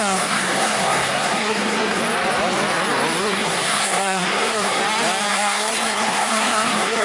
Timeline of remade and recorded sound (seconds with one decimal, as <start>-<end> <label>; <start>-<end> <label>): 0.0-2.0 remade; 2.0-3.2 recorded; 3.2-4.8 remade; 4.8-5.3 recorded; 5.3-7.0 remade